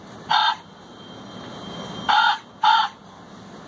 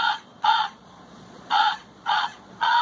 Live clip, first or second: first